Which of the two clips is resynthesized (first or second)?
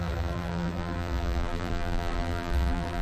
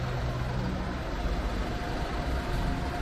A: first